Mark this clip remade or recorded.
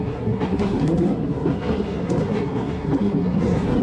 remade